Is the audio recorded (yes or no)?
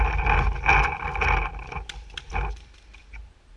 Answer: yes